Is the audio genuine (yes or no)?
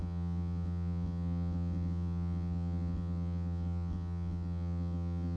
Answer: no